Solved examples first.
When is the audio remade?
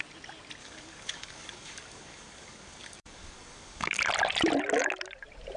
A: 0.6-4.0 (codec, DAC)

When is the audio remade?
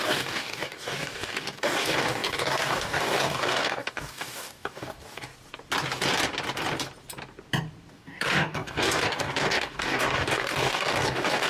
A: 0.0-5.3 (codec, DAC); 7.9-11.5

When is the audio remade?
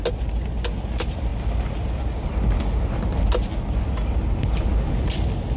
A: none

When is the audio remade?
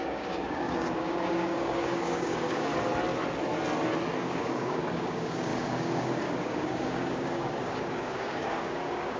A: 0.0-2.7 (codec, DAC); 4.2-9.2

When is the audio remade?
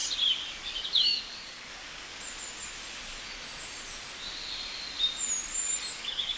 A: 0.6-2.1 (codec, DAC); 5.9-6.4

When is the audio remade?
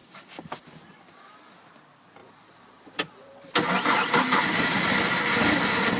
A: 0.0-0.6 (codec, DAC)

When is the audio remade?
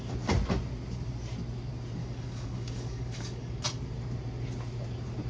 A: 2.0-3.6 (codec, DAC)